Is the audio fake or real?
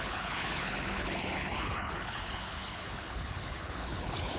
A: fake